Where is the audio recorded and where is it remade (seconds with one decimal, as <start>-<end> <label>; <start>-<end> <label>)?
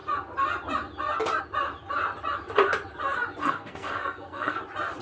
0.0-3.4 recorded; 3.4-4.6 remade; 4.6-5.0 recorded